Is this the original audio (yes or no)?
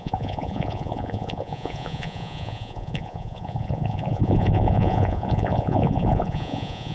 no